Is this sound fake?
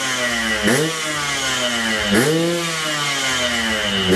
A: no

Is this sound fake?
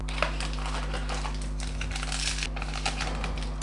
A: no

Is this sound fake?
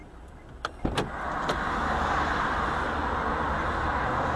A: no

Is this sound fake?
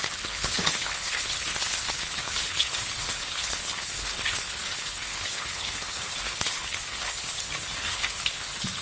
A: yes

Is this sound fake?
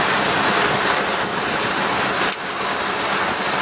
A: no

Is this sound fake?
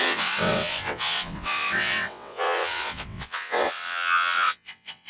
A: yes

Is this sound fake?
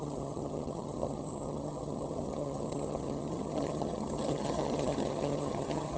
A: yes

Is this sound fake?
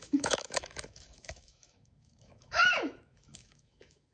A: yes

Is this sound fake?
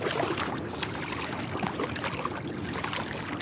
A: no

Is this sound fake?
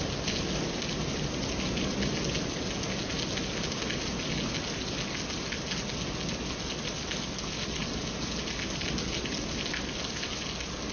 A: no